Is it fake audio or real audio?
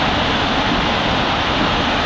real